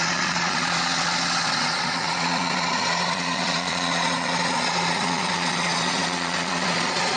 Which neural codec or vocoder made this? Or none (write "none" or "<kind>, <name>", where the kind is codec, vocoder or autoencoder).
vocoder, Vocos